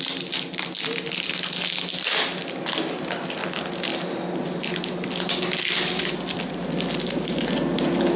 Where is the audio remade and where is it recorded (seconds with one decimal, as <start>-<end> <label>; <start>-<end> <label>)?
0.0-8.2 recorded